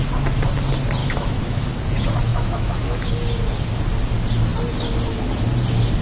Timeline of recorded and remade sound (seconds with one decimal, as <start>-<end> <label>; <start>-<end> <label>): 0.0-1.0 recorded; 1.0-1.7 remade; 1.7-2.3 recorded; 2.3-3.1 remade; 3.1-6.0 recorded